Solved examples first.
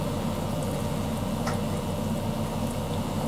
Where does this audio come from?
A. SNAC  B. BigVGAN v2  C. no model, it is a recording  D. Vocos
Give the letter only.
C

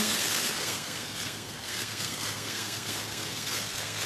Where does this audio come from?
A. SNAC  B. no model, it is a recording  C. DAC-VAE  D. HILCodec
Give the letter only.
A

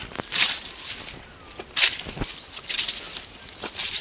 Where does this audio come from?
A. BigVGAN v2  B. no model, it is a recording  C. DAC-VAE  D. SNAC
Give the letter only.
B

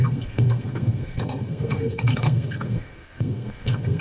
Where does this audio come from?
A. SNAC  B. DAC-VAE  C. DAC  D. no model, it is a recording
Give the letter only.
A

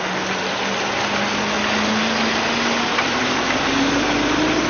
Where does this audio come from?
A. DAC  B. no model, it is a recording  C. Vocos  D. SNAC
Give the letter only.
B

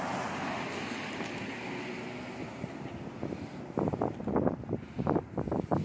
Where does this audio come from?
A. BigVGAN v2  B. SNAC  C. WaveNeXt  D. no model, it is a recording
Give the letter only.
D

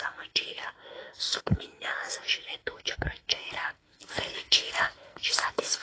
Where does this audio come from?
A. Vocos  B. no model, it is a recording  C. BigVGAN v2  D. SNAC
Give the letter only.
D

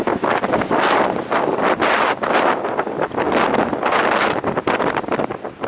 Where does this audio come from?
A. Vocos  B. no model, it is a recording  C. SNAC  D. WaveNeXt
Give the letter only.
B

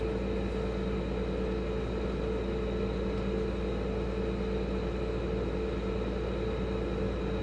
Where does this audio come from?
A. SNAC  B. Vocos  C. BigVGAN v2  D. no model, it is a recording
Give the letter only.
D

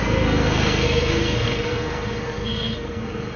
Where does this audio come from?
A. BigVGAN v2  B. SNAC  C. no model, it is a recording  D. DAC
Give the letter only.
B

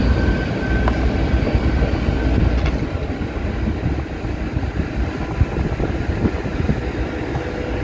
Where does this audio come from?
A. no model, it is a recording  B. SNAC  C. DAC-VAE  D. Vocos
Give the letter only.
A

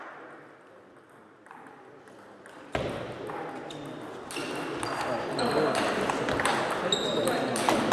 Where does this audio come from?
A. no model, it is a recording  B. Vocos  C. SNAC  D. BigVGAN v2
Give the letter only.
A